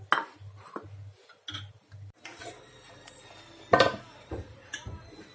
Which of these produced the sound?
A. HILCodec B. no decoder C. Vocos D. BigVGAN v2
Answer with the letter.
B